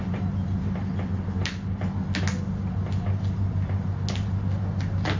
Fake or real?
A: real